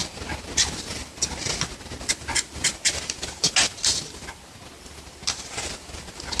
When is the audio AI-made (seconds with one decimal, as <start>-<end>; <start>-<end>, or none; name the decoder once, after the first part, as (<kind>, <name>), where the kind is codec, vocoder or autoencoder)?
none